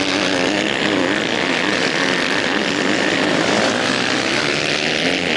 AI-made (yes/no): no